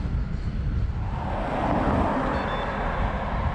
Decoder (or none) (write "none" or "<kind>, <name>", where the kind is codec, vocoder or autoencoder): none